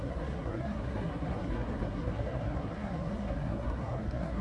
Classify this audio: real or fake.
fake